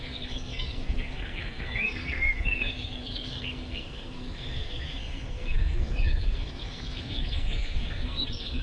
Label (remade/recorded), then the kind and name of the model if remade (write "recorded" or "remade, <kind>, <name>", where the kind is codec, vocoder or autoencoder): remade, codec, SNAC